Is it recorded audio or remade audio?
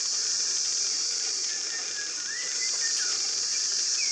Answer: remade